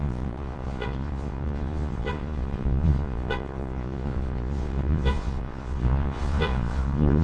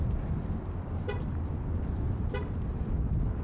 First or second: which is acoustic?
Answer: second